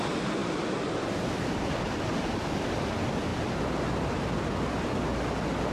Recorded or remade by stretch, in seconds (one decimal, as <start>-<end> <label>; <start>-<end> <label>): 0.0-5.7 recorded